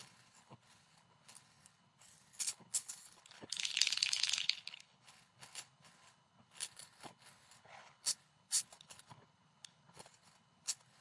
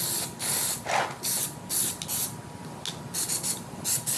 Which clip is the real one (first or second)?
second